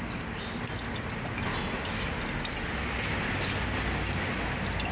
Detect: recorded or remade recorded